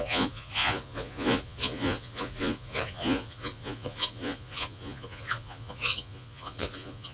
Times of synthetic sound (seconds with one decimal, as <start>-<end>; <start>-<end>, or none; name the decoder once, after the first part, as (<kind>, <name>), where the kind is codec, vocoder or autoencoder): 0.0-7.1 (vocoder, Vocos)